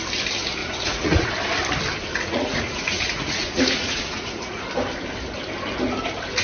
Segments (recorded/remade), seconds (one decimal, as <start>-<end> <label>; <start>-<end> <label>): 0.0-0.6 recorded; 0.6-1.3 remade; 1.3-2.1 recorded; 2.1-4.6 remade; 4.6-6.4 recorded